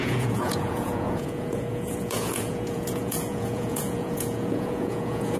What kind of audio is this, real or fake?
fake